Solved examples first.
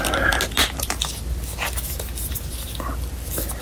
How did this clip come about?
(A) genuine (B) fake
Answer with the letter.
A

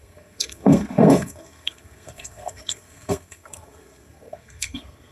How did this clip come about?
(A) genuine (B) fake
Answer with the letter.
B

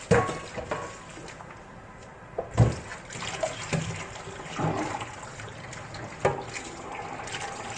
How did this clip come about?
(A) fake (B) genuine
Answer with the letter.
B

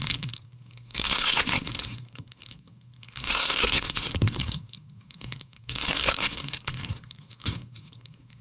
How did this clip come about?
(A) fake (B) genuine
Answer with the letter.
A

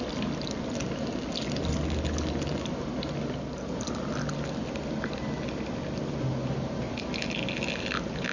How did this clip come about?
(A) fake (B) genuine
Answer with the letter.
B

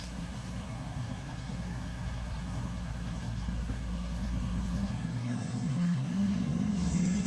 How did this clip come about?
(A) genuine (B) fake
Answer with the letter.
B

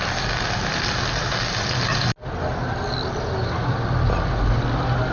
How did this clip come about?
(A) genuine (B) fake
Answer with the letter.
A